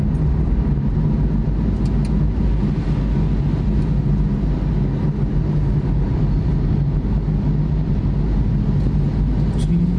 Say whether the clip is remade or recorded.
recorded